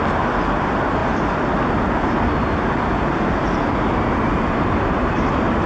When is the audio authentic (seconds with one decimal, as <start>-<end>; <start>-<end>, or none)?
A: 0.0-5.7